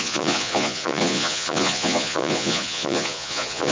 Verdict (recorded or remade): remade